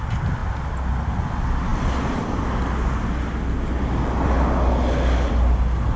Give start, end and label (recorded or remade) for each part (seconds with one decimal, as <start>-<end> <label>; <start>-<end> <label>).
0.0-6.0 recorded